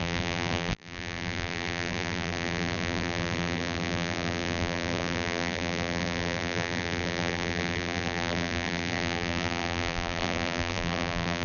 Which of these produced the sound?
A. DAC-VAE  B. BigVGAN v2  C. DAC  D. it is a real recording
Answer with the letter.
B